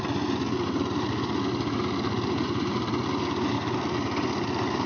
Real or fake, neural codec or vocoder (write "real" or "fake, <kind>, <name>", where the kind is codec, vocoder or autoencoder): real